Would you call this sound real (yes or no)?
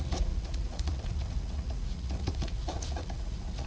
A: no